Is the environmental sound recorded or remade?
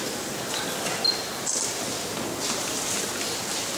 recorded